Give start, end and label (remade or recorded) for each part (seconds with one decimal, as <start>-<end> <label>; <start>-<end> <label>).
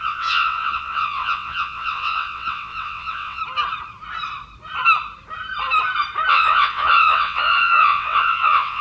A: 0.0-3.4 remade; 3.4-6.3 recorded; 6.3-8.8 remade